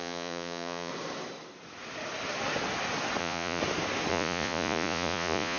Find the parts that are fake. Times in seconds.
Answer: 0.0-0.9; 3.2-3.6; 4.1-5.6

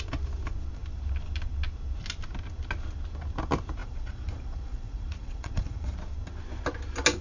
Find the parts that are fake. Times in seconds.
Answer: 3.8-6.0

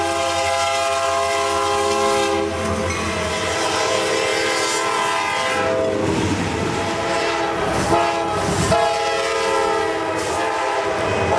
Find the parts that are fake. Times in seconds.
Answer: none

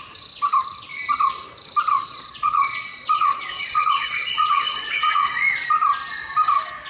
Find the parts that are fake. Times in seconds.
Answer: 1.9-5.7

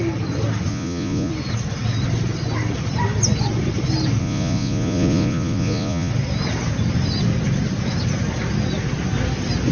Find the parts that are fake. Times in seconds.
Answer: 0.7-1.3; 4.2-6.1

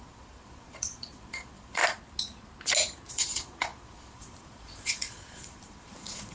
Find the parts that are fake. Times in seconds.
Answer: 0.0-1.8; 3.1-6.3

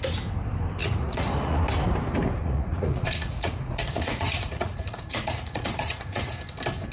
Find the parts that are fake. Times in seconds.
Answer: 0.8-1.6; 2.4-6.3

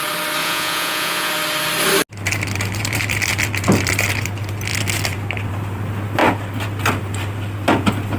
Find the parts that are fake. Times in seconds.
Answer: 0.4-1.3